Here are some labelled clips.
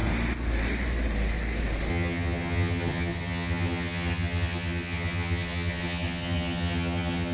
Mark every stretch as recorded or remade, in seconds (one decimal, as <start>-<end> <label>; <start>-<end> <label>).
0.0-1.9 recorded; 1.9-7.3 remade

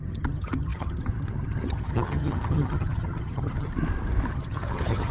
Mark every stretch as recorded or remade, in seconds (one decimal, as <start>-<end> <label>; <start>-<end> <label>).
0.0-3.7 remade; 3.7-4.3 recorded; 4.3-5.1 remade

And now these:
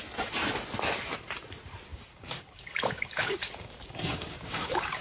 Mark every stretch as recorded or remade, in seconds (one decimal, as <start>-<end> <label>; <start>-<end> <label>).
0.0-1.9 recorded; 1.9-5.0 remade

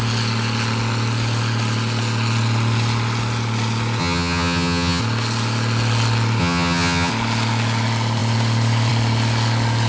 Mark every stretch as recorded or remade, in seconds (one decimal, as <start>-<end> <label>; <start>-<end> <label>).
0.0-4.0 recorded; 4.0-5.0 remade; 5.0-6.4 recorded; 6.4-7.1 remade; 7.1-9.9 recorded

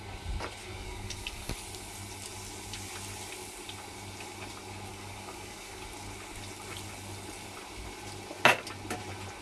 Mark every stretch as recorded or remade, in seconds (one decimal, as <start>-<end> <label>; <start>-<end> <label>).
0.0-0.6 recorded; 0.6-1.5 remade; 1.5-4.9 recorded; 4.9-5.8 remade; 5.8-9.4 recorded

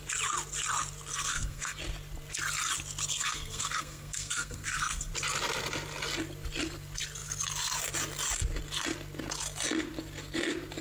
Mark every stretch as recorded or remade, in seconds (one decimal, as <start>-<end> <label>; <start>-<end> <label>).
0.0-1.1 recorded; 1.1-1.8 remade; 1.8-3.1 recorded; 3.1-5.1 remade; 5.1-10.8 recorded